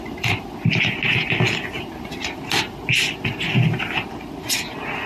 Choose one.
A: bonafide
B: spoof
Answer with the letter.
A